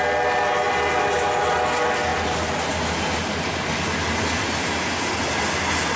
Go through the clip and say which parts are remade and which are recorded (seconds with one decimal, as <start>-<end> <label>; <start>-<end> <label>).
0.0-6.0 recorded